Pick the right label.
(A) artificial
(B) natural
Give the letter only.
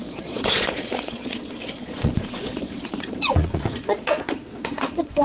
A